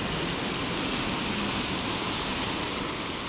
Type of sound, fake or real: real